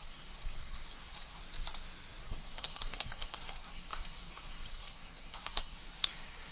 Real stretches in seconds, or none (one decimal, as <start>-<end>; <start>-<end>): 1.4-2.2